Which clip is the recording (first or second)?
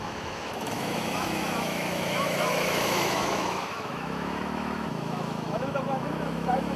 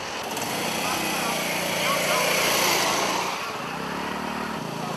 second